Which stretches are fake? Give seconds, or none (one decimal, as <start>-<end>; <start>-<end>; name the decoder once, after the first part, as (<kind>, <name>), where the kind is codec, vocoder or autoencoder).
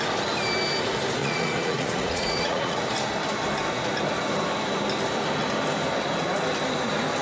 1.2-2.8 (vocoder, Vocos)